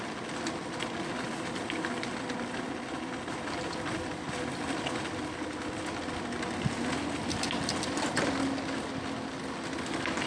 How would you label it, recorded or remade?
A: recorded